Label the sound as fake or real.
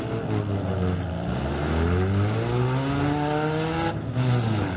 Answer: real